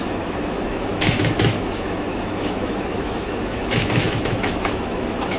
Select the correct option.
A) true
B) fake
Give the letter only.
B